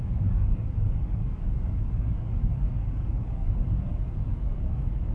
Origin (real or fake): fake